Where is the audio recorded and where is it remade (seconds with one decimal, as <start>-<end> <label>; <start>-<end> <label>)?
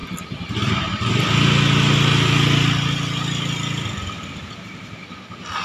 0.0-5.6 recorded